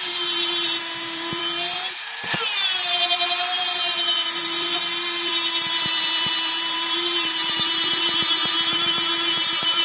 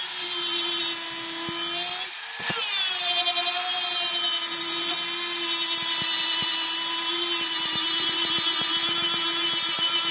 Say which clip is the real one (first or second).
second